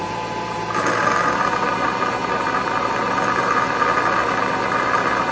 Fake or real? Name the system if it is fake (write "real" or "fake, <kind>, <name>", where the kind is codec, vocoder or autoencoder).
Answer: real